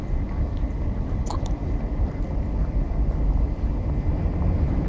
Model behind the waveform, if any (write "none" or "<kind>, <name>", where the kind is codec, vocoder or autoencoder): none